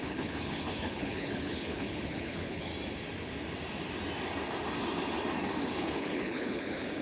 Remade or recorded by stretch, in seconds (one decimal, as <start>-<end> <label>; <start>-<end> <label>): 0.0-2.7 remade; 2.7-5.6 recorded; 5.6-7.0 remade